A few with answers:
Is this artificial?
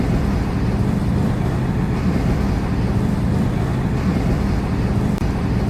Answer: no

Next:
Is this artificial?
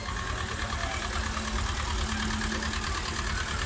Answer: no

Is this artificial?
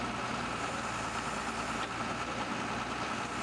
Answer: no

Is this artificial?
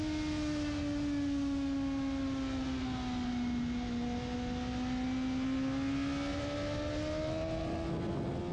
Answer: no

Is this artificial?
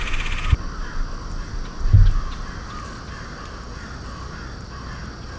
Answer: no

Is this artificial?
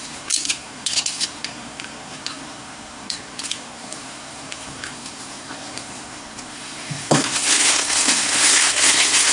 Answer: yes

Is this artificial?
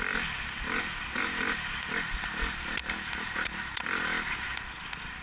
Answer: no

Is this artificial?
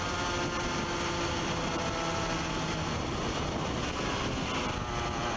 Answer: no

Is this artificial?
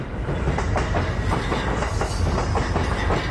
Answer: no